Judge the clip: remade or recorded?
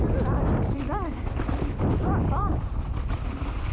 recorded